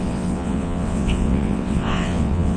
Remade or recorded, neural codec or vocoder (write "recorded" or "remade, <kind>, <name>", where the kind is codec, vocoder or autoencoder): remade, vocoder, WaveNeXt